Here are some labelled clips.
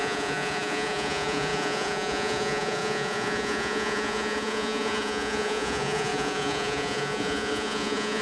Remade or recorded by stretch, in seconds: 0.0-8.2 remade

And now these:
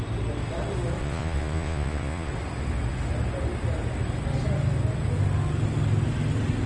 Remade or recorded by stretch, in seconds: 0.0-1.0 recorded; 1.0-2.3 remade; 2.3-6.7 recorded

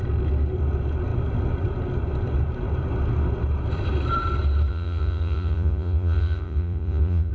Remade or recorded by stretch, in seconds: 0.0-4.7 recorded; 4.7-7.3 remade

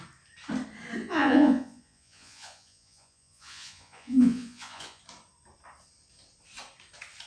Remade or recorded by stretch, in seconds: 0.0-1.0 recorded; 1.0-5.0 remade; 5.0-7.3 recorded